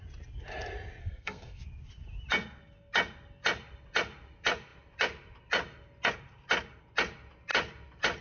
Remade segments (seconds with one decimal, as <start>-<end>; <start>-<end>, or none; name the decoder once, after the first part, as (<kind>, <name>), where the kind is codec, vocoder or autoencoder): 1.0-1.6 (codec, SNAC)